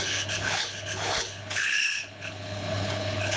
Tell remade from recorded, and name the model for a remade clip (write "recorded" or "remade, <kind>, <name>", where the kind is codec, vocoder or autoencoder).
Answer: remade, codec, HILCodec